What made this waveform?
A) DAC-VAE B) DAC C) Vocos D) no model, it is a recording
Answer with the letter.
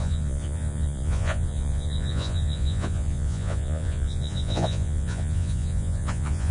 C